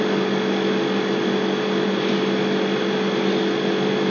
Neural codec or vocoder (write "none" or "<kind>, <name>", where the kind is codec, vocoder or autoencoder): none